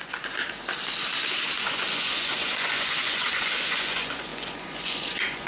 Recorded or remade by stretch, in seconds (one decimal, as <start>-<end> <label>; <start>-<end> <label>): 0.0-0.4 remade; 0.4-1.6 recorded; 1.6-5.5 remade